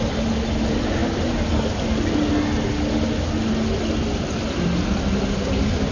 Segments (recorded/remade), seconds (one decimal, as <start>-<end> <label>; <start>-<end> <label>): 0.0-5.9 recorded